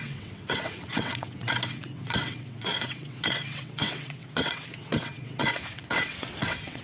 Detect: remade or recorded remade